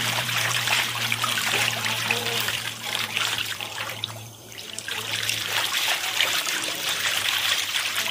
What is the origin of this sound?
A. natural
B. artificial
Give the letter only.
B